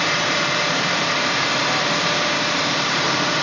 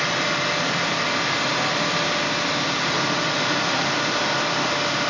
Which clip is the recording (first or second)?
second